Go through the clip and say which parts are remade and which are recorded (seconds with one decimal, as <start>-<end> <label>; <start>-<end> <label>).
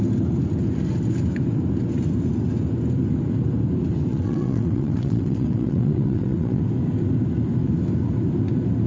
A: 0.0-4.1 recorded; 4.1-6.6 remade; 6.6-8.9 recorded